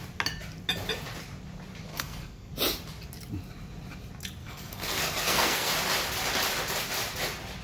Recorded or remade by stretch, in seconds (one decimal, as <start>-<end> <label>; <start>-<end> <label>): 0.0-1.9 recorded; 1.9-2.5 remade; 2.5-4.4 recorded; 4.4-5.7 remade; 5.7-7.6 recorded